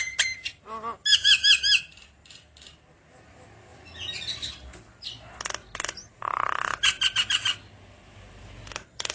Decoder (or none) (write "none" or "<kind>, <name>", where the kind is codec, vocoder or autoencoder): none